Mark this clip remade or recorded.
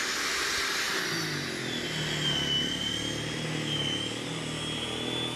recorded